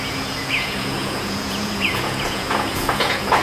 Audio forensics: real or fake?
fake